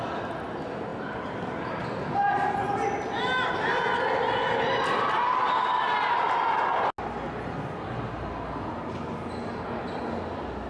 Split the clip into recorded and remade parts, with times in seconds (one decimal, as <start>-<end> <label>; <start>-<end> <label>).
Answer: 0.0-10.7 recorded